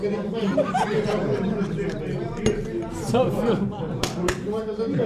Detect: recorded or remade remade